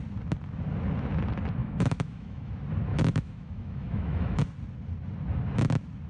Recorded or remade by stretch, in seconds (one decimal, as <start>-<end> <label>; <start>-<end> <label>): 0.0-1.6 recorded; 1.6-2.5 remade; 2.5-2.9 recorded; 2.9-4.4 remade; 4.4-6.1 recorded